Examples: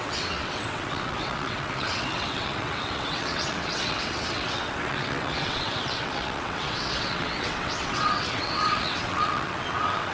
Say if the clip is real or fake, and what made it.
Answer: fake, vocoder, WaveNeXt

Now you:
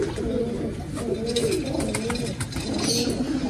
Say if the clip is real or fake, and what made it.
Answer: real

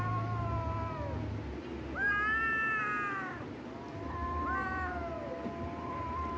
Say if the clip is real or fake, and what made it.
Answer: real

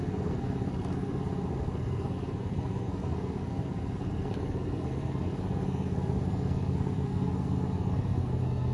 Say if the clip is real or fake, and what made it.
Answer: fake, codec, SNAC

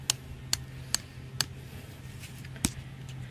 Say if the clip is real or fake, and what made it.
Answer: real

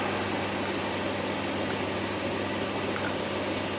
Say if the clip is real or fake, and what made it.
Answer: real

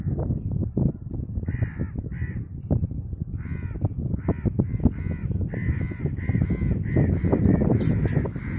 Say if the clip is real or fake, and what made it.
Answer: real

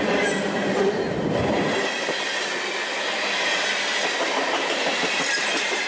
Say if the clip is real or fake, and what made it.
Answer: real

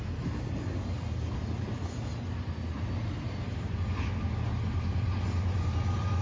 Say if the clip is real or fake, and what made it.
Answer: real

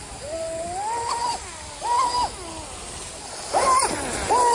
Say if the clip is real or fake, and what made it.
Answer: real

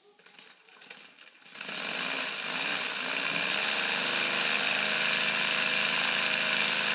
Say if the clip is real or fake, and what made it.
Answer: real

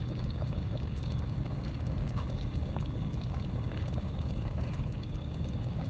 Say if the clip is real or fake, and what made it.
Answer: fake, codec, DAC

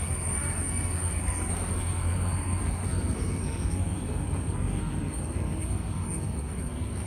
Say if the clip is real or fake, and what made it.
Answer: fake, codec, SNAC